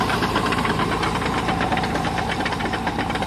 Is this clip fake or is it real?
fake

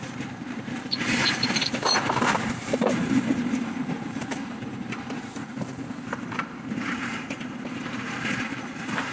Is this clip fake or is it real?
fake